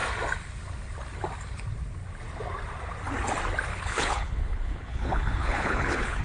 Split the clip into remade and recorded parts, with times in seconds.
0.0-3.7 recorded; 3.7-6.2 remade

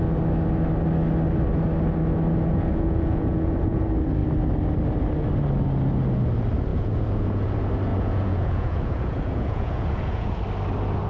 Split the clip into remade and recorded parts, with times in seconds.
0.0-2.5 recorded; 2.5-3.8 remade; 3.8-6.7 recorded; 6.7-7.5 remade; 7.5-7.9 recorded; 7.9-10.4 remade; 10.4-11.1 recorded